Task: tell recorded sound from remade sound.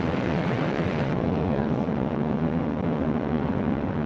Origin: remade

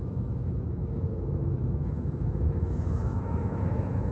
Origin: remade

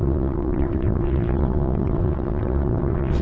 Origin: remade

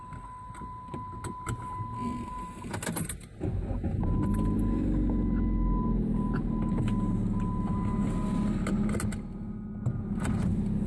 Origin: recorded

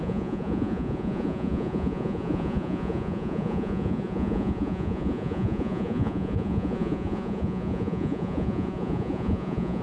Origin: remade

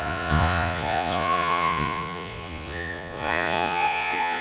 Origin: remade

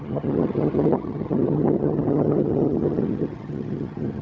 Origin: remade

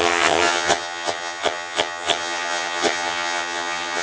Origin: remade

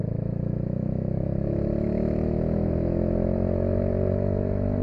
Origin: remade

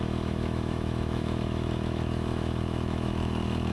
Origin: remade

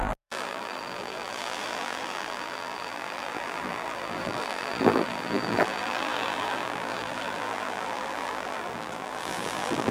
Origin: remade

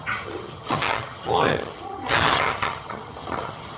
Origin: remade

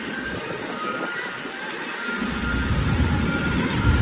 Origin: recorded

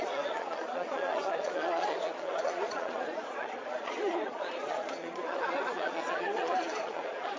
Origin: remade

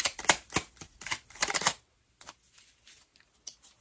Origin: recorded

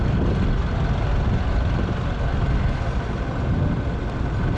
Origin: recorded